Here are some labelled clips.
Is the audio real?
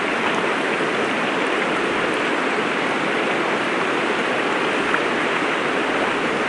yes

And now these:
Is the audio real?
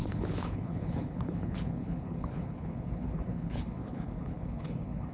no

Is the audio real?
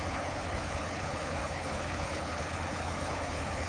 no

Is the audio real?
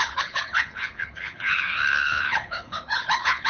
no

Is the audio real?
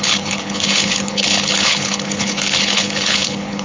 no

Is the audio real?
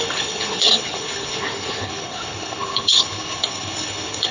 no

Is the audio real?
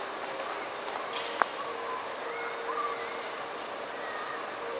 yes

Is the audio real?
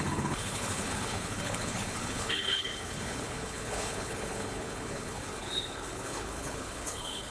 no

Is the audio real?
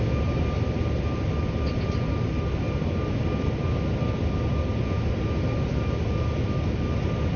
yes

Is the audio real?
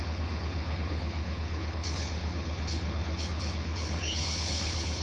no